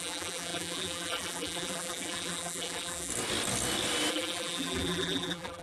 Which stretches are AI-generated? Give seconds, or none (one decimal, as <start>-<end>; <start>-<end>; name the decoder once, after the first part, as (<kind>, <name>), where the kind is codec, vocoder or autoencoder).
0.0-3.1 (vocoder, BigVGAN v2); 4.1-5.6